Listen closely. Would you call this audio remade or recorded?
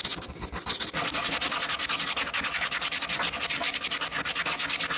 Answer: recorded